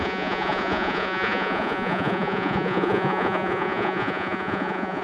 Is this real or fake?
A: fake